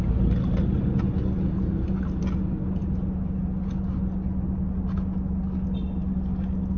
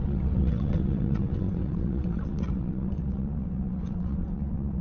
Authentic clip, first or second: first